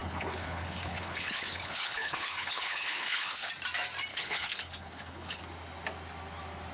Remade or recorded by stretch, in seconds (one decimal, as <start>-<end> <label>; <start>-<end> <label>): 0.0-3.5 remade; 3.5-4.1 recorded; 4.1-5.4 remade; 5.4-6.7 recorded